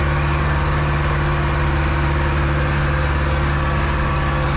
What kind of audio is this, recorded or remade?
recorded